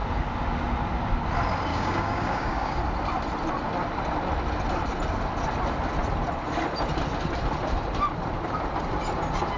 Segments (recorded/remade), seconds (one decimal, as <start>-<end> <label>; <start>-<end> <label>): 0.0-1.7 recorded; 1.7-2.8 remade; 2.8-9.6 recorded